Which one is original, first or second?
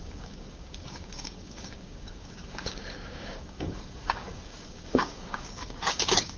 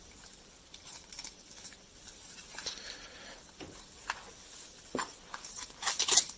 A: second